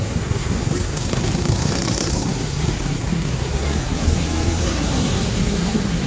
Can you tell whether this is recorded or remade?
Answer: remade